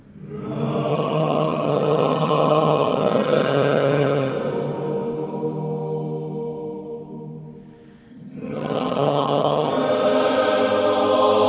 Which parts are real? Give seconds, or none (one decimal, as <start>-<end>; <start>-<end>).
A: 0.0-0.9; 4.3-8.1; 9.7-11.5